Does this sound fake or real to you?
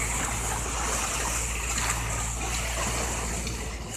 real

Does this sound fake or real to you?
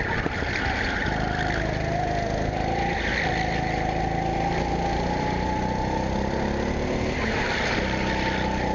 real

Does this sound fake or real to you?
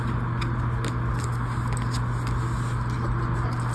real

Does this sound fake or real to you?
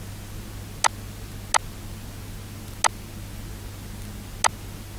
real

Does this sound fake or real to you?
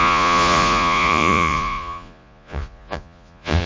fake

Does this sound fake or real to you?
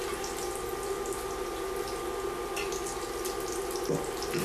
real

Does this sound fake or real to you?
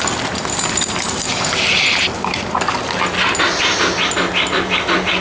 real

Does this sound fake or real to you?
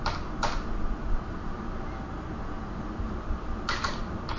real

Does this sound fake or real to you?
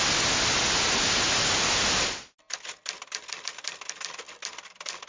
real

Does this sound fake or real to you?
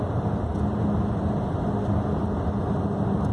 real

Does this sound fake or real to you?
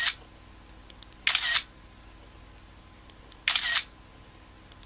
real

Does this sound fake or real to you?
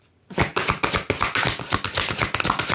real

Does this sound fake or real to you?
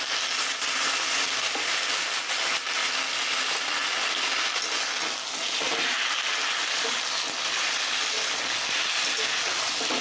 real